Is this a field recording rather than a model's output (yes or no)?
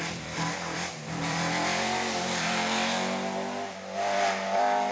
no